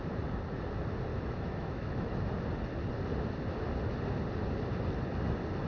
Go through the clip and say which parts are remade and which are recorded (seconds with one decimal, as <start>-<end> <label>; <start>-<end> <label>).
0.0-1.1 recorded; 1.1-2.3 remade; 2.3-5.7 recorded